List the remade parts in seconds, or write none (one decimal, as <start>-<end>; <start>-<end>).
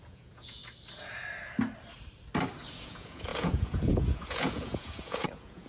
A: 0.0-0.6; 2.7-5.7